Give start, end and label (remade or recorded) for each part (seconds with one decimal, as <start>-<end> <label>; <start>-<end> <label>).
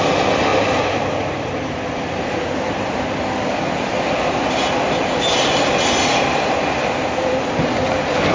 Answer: 0.0-0.5 recorded; 0.5-3.0 remade; 3.0-6.1 recorded; 6.1-7.5 remade; 7.5-8.3 recorded